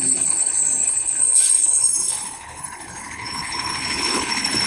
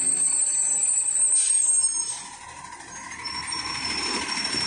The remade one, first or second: first